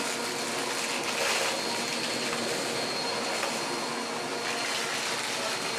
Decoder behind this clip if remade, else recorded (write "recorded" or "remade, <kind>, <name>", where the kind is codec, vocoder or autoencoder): recorded